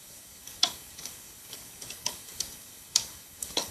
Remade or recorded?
remade